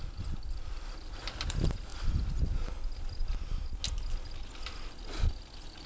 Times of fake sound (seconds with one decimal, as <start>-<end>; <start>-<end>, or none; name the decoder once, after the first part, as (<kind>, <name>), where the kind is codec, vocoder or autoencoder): none